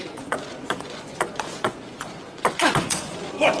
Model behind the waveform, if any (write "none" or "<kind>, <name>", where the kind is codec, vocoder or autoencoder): vocoder, Vocos